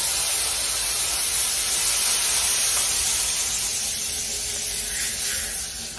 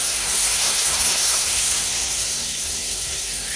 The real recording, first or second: first